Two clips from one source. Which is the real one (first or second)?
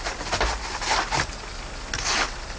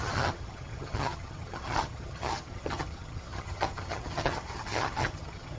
first